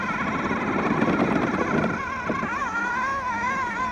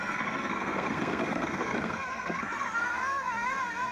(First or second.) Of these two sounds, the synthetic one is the second